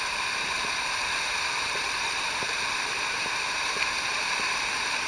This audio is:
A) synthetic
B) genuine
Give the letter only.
B